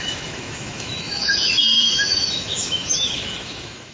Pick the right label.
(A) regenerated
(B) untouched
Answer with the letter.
A